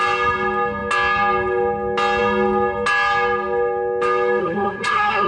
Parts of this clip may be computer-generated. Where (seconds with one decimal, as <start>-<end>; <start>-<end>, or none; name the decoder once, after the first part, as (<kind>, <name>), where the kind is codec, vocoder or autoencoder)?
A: 4.4-5.3 (codec, SNAC)